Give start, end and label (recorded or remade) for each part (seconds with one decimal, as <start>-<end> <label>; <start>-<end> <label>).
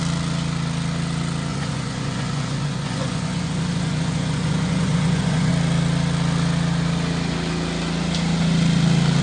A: 0.0-1.5 recorded; 1.5-5.5 remade; 5.5-9.2 recorded